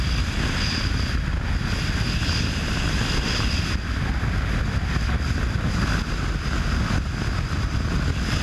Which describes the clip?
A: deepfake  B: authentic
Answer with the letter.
B